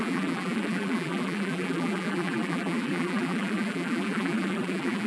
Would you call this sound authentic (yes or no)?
no